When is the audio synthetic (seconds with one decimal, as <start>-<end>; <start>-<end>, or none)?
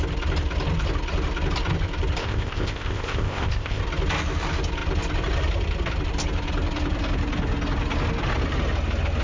2.2-3.8